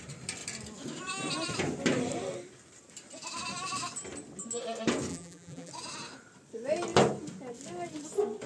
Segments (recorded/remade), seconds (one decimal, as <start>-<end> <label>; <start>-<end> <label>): 0.0-5.1 recorded; 5.1-5.7 remade; 5.7-8.5 recorded